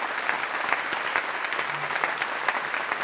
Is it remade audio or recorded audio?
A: recorded